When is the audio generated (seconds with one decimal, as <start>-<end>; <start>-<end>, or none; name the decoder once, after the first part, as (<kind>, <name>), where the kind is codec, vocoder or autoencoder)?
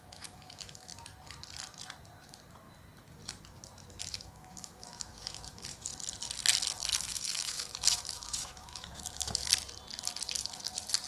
0.0-0.9 (autoencoder, DAC-VAE); 4.0-5.9; 7.0-9.5